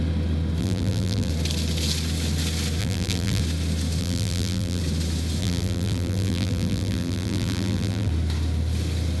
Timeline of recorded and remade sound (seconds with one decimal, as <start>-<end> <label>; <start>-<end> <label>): 0.0-0.6 recorded; 0.6-1.3 remade; 1.3-2.8 recorded; 2.8-3.4 remade; 3.4-4.0 recorded; 4.0-4.8 remade; 4.8-5.4 recorded; 5.4-8.1 remade; 8.1-9.2 recorded